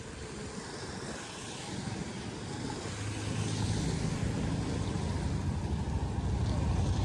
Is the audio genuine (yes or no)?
yes